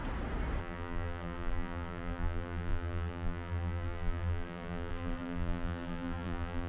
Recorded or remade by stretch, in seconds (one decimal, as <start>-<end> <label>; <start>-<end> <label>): 0.0-0.6 recorded; 0.6-6.7 remade